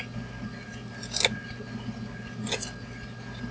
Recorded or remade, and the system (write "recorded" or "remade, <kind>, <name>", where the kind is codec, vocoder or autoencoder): recorded